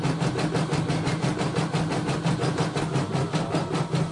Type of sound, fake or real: real